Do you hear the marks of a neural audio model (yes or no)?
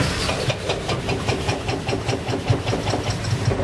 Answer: no